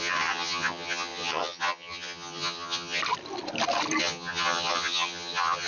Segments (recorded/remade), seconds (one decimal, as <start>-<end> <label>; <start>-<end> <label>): 0.0-3.0 remade; 3.0-4.0 recorded; 4.0-5.7 remade